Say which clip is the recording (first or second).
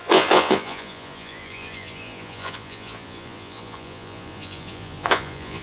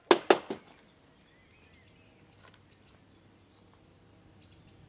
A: second